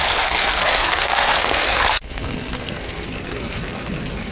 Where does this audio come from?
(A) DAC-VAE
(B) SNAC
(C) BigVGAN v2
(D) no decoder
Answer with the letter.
B